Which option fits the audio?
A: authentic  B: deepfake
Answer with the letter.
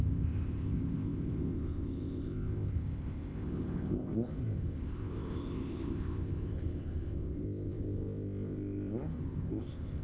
B